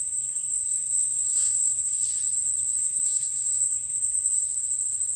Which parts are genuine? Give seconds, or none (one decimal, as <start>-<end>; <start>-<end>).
2.0-2.8; 4.4-5.2